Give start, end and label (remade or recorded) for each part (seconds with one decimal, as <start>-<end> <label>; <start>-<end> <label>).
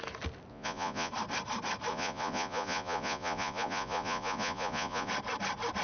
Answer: 0.0-0.5 recorded; 0.5-1.1 remade; 1.1-1.9 recorded; 1.9-5.1 remade; 5.1-5.8 recorded